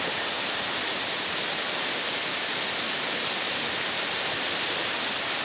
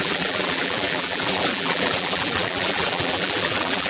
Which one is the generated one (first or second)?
second